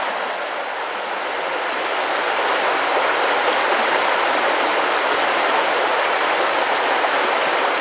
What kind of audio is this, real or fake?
real